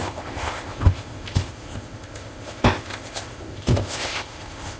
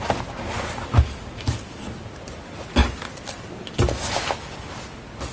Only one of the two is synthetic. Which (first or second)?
first